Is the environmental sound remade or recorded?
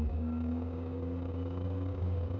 remade